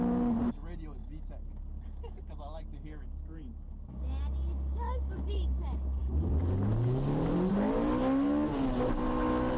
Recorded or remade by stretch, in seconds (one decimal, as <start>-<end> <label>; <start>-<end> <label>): 0.0-9.6 recorded